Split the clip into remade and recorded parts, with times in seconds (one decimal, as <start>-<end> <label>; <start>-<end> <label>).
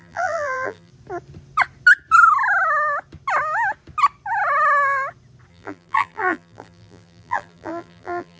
0.0-0.9 remade; 0.9-5.5 recorded; 5.5-8.4 remade